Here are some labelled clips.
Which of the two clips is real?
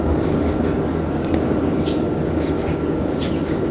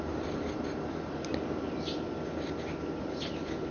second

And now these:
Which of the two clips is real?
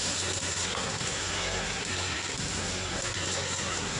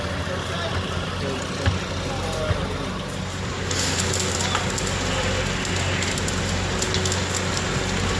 second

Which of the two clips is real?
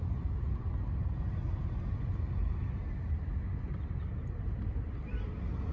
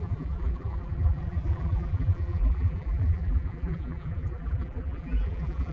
first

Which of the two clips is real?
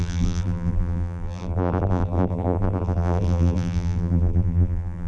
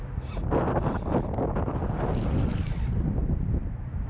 second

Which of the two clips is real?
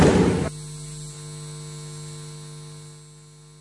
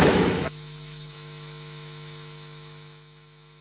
first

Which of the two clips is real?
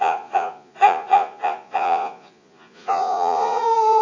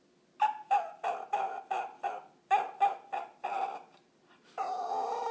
second